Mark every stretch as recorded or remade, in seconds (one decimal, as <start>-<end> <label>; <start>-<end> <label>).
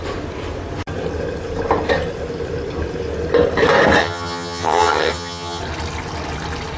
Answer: 0.0-4.0 recorded; 4.0-5.6 remade; 5.6-6.8 recorded